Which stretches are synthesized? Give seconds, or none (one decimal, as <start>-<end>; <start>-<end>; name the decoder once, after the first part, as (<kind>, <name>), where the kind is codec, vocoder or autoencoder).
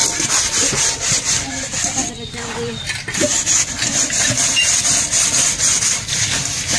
none